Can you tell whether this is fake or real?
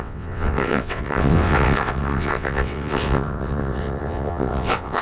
fake